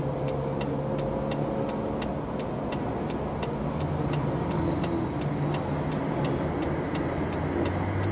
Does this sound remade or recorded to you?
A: recorded